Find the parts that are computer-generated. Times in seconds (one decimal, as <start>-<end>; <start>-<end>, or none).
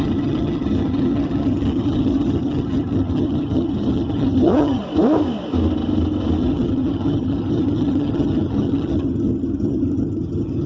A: 0.0-4.8; 6.4-10.7